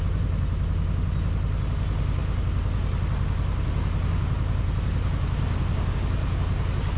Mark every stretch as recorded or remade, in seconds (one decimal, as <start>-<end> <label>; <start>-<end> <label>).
0.0-7.0 recorded